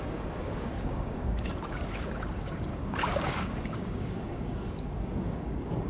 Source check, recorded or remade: remade